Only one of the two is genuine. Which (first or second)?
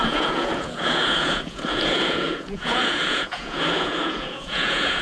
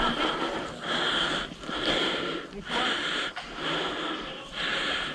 second